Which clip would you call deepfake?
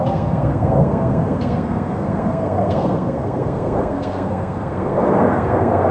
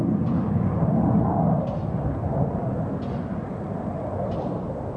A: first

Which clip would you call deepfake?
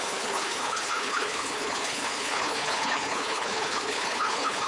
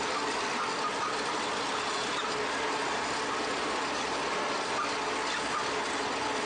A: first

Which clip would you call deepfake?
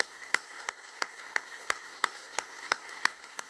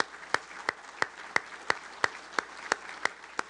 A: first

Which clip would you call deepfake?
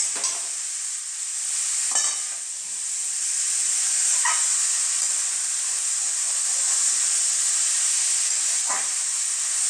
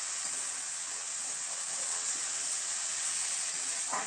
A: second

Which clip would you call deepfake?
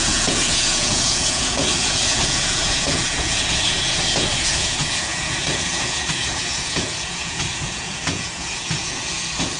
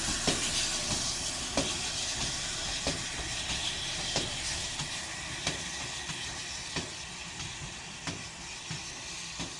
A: first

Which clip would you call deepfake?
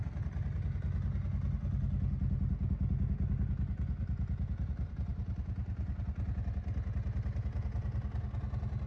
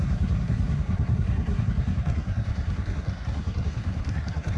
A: second